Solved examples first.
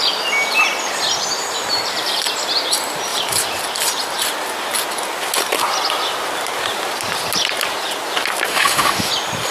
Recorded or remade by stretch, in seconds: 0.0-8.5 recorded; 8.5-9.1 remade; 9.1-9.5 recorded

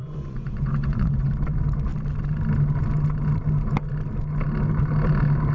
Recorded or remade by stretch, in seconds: 0.0-1.3 remade; 1.3-5.5 recorded

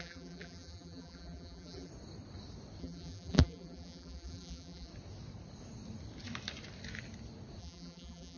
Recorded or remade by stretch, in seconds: 0.0-1.9 remade; 1.9-2.8 recorded; 2.8-4.9 remade; 4.9-7.6 recorded; 7.6-8.4 remade